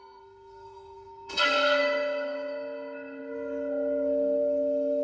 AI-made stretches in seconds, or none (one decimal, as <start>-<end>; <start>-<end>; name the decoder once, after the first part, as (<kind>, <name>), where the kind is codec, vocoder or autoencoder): 0.0-5.0 (codec, SNAC)